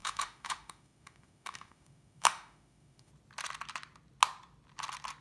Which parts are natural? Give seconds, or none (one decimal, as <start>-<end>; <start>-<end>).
3.1-5.2

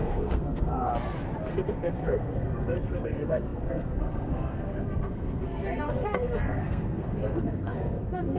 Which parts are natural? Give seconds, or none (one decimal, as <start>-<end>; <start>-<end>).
0.9-1.5

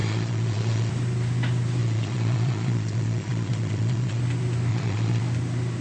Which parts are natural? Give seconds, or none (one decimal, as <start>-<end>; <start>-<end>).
0.9-1.8; 4.2-4.7; 5.2-5.8

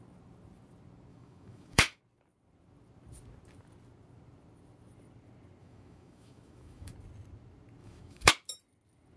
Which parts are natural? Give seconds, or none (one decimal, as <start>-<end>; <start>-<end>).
0.0-1.1; 2.0-5.6; 6.9-7.8; 8.3-9.2

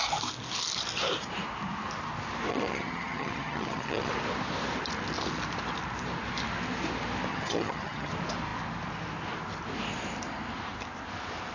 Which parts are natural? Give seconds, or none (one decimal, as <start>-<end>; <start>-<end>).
0.0-2.5; 4.1-7.3; 8.1-11.5

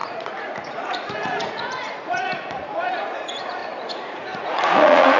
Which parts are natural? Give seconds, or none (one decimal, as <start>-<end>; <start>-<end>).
none

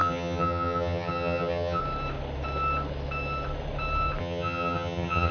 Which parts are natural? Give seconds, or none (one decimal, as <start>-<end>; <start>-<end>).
1.8-4.2

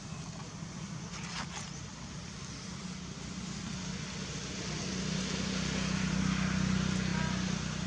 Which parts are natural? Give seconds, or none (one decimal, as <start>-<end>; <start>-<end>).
0.0-7.9